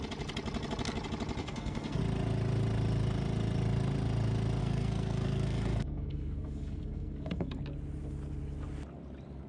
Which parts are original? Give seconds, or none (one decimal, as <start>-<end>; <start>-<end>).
0.0-1.4; 2.0-4.6; 7.6-9.5